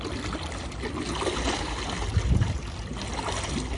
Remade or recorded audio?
recorded